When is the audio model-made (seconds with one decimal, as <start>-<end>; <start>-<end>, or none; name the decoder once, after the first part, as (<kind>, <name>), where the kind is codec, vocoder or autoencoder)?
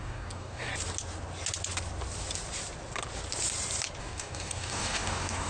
0.0-0.7 (codec, DAC); 4.0-5.5